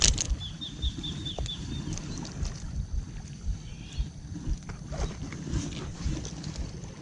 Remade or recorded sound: recorded